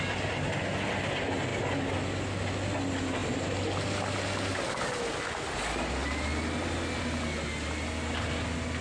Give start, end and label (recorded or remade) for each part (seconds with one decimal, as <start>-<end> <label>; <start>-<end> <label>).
0.0-8.8 recorded